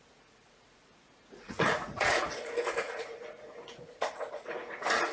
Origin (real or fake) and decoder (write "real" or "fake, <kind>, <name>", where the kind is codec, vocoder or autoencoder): fake, vocoder, Vocos